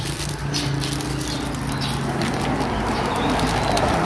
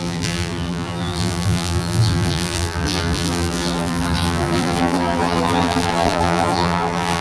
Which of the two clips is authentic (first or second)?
first